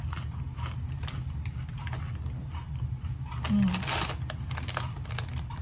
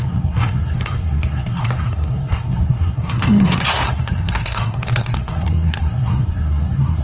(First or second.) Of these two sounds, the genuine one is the first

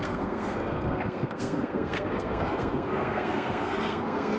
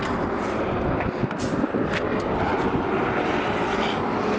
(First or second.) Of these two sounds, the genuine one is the second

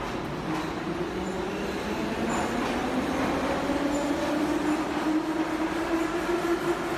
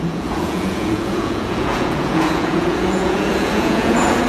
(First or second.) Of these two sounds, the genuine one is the first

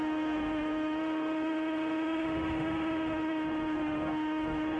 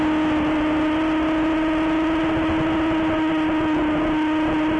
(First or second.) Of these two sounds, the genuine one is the second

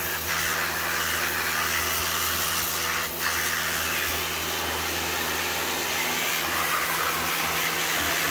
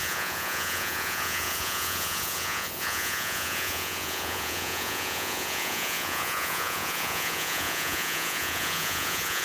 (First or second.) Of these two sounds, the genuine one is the first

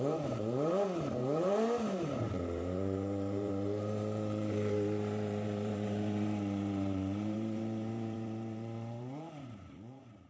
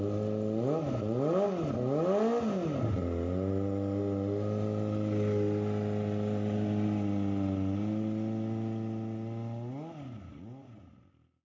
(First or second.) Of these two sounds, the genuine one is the second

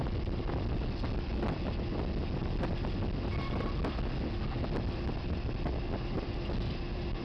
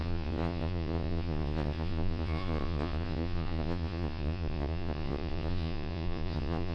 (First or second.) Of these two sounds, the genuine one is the first